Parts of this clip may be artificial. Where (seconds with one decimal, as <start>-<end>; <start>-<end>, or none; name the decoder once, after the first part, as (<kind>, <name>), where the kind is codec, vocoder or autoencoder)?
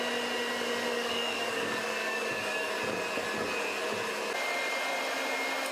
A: 0.9-2.7 (codec, DAC)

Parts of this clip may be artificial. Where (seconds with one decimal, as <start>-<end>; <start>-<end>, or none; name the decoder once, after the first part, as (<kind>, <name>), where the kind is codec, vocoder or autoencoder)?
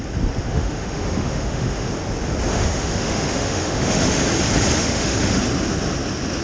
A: 0.5-1.9 (autoencoder, DAC-VAE); 2.5-4.2; 4.8-5.4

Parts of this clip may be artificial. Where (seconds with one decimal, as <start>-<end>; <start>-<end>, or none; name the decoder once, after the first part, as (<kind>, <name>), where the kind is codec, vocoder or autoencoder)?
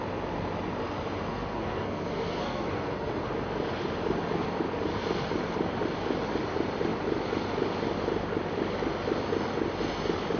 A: 1.3-3.1 (codec, SNAC)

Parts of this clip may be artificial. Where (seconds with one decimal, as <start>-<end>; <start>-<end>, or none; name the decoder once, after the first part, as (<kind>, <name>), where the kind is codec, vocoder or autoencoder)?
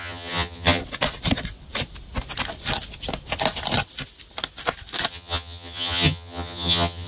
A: 0.0-0.8 (vocoder, HiFi-GAN); 5.1-7.1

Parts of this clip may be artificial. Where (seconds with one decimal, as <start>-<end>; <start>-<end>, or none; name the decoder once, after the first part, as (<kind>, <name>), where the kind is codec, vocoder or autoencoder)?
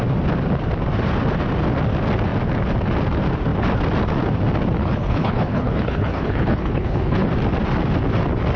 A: 4.8-7.3 (codec, HILCodec)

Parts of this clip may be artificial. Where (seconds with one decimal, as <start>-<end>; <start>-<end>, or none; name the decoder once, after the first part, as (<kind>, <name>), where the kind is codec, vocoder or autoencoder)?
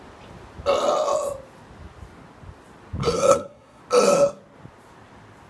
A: 3.0-3.8 (codec, SNAC)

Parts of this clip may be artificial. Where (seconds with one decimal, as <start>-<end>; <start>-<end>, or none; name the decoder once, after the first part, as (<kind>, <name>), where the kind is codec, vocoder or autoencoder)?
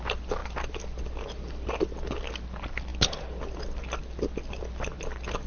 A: none